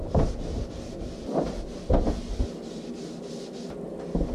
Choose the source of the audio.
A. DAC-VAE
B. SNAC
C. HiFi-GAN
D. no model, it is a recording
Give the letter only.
D